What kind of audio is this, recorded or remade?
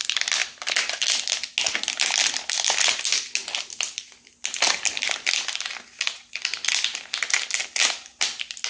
recorded